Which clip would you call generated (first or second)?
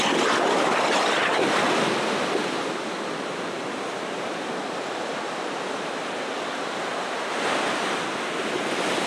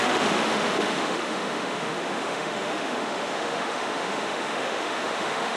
second